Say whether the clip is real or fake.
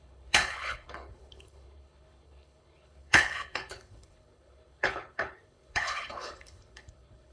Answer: fake